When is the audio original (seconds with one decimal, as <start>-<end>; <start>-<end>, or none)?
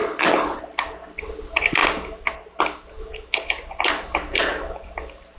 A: 0.6-5.4